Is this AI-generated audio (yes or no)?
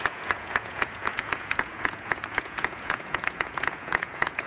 yes